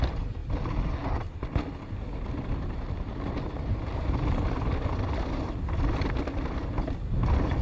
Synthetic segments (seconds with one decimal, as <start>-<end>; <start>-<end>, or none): 3.7-5.5